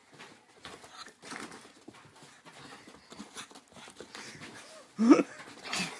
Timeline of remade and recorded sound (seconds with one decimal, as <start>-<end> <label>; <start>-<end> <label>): 0.0-6.0 recorded